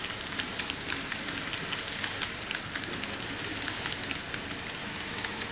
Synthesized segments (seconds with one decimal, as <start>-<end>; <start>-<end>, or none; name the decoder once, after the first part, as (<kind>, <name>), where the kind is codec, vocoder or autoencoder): 4.8-5.5 (autoencoder, DAC-VAE)